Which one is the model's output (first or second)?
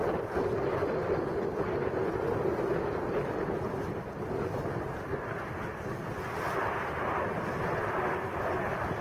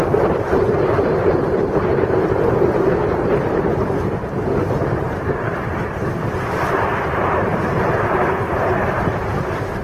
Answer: second